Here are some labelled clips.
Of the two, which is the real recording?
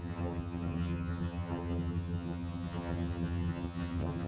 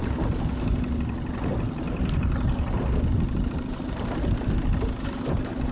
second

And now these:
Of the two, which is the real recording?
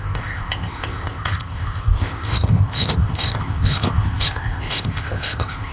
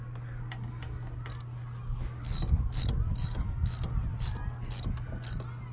second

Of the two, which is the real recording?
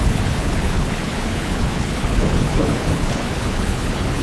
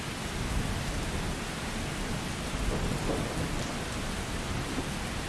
second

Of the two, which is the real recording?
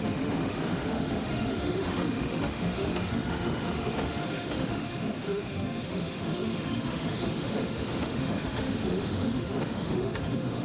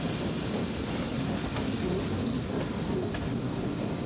second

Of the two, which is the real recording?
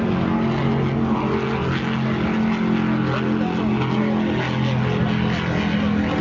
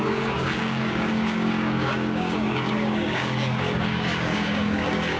first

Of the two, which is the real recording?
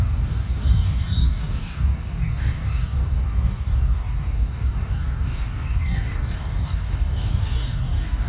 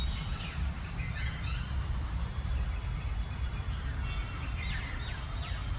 second